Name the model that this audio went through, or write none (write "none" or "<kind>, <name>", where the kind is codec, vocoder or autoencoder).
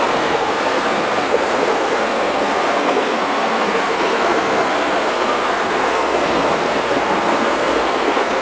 codec, SNAC